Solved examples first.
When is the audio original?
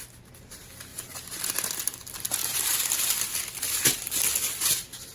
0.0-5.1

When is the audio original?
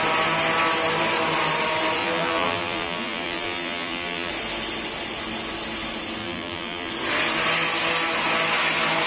0.0-2.0; 4.3-6.2; 6.9-9.1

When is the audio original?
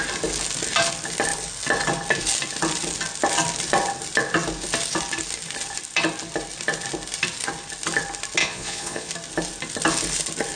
0.0-8.4; 9.1-10.6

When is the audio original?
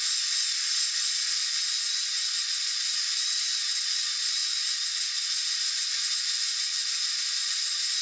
0.0-8.0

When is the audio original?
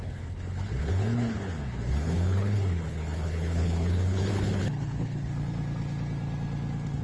5.3-7.0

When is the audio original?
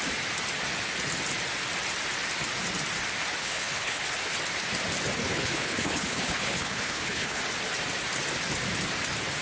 0.0-3.4; 4.0-5.2; 7.4-9.4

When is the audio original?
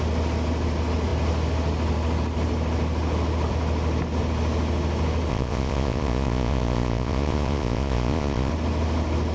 0.0-5.3; 8.5-9.3